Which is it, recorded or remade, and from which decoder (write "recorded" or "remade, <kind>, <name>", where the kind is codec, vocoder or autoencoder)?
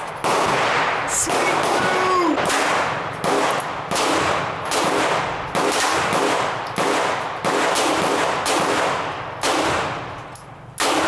recorded